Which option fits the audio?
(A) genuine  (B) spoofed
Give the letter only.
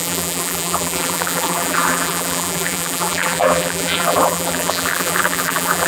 B